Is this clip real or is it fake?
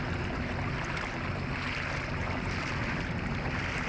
real